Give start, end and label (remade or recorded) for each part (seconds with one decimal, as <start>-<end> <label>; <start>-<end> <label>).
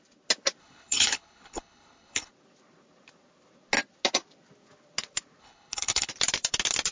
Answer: 0.0-0.6 recorded; 0.6-2.3 remade; 2.3-5.4 recorded; 5.4-6.1 remade; 6.1-6.9 recorded